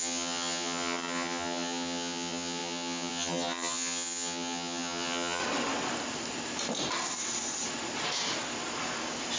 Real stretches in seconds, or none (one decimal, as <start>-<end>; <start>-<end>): 5.4-9.4